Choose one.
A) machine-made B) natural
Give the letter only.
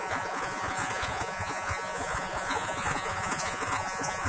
A